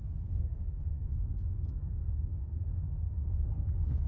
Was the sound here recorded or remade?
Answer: remade